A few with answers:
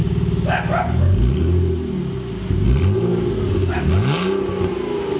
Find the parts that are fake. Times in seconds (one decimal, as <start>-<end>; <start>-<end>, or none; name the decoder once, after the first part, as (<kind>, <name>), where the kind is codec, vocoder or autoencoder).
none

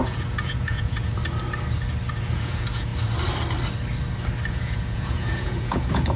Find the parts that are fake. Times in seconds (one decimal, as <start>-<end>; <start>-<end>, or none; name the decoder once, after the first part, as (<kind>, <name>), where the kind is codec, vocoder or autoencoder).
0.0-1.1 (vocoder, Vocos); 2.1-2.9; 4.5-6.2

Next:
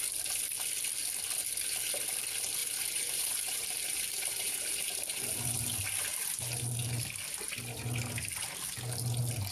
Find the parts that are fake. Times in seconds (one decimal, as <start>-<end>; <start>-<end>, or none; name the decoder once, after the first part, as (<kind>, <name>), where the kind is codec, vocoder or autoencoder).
2.6-5.3 (vocoder, BigVGAN v2)

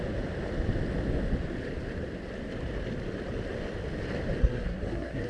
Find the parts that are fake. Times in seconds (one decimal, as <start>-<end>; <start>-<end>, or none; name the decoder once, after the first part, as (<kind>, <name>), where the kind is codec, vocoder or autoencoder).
4.4-5.3 (codec, SNAC)